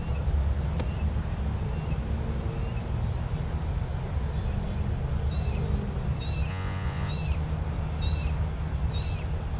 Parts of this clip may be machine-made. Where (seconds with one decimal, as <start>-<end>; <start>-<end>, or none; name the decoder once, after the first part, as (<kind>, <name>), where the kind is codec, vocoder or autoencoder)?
6.5-7.1 (vocoder, Vocos)